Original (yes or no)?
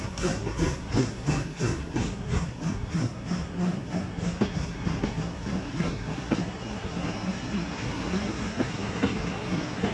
no